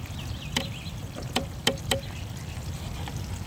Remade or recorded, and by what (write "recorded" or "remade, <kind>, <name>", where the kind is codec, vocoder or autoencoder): recorded